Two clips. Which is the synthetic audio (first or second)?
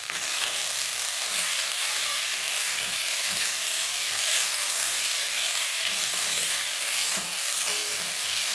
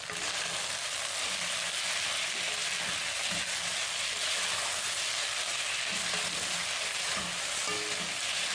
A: first